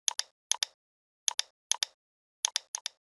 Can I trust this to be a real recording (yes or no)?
yes